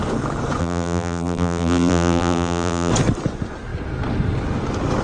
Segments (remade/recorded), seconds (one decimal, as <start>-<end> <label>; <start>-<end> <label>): 0.0-0.6 recorded; 0.6-2.9 remade; 2.9-5.0 recorded